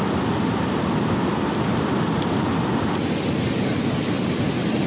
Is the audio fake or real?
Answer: real